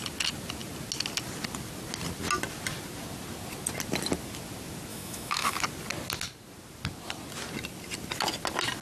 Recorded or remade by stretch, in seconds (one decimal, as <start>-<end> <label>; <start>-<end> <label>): 0.0-4.9 recorded; 4.9-5.6 remade; 5.6-8.8 recorded